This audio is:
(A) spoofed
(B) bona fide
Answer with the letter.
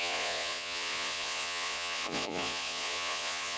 A